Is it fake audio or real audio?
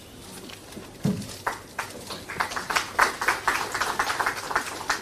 real